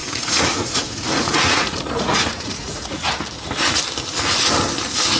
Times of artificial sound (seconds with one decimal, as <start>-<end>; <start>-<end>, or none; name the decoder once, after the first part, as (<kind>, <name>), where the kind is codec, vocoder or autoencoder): 0.0-3.1 (vocoder, Vocos)